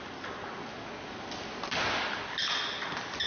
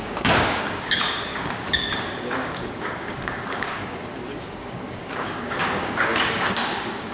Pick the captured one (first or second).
first